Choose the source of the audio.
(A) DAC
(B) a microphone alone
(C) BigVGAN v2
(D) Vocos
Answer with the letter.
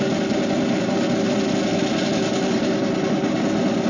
B